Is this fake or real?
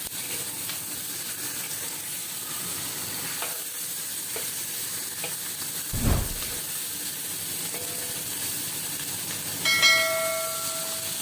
real